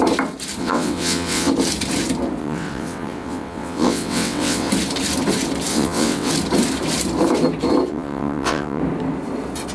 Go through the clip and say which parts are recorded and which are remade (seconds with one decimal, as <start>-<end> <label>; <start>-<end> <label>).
0.0-0.6 recorded; 0.6-1.5 remade; 1.5-2.4 recorded; 2.4-4.7 remade; 4.7-5.7 recorded; 5.7-6.3 remade; 6.3-7.9 recorded; 7.9-8.8 remade; 8.8-9.7 recorded